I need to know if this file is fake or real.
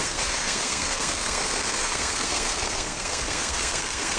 fake